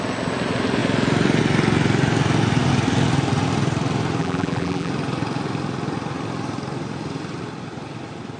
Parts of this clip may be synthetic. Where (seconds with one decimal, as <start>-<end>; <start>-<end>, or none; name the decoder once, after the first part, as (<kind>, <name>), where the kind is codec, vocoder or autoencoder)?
4.2-4.9 (vocoder, BigVGAN v2)

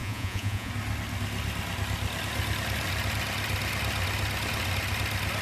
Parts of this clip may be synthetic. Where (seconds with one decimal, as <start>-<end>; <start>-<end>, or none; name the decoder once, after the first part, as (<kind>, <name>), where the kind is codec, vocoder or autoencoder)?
0.0-0.7 (vocoder, Vocos)

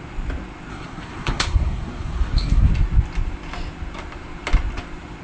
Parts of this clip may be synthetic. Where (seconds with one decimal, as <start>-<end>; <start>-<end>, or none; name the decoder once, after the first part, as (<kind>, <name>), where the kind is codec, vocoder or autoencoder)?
0.7-2.7 (codec, SNAC)

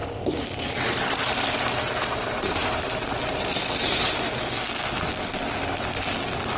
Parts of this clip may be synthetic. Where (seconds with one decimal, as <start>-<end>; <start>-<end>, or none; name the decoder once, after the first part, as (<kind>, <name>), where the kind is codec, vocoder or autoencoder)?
0.0-3.0 (vocoder, BigVGAN v2)

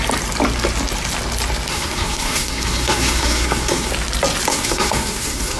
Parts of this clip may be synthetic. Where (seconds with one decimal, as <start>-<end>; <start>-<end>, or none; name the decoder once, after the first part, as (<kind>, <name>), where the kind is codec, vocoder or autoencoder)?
1.7-3.9 (codec, SNAC); 4.5-5.6